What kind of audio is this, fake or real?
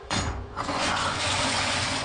fake